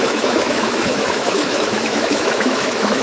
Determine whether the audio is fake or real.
fake